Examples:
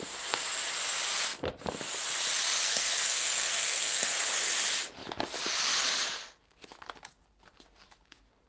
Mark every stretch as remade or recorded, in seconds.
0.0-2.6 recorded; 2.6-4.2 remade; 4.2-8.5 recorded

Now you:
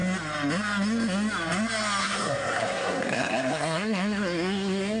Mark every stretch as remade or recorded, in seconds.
0.0-2.0 recorded; 2.0-5.0 remade

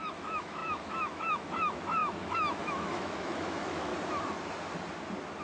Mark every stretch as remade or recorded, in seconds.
0.0-3.9 remade; 3.9-5.4 recorded

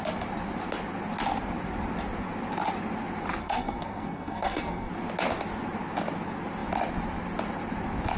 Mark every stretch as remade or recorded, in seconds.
0.0-3.4 recorded; 3.4-4.9 remade; 4.9-8.2 recorded

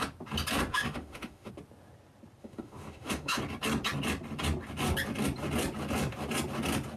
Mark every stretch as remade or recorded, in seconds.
0.0-0.7 recorded; 0.7-1.5 remade; 1.5-2.4 recorded; 2.4-3.4 remade; 3.4-7.0 recorded